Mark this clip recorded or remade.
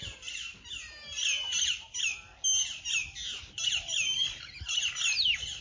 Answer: recorded